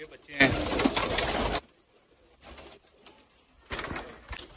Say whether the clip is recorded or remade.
recorded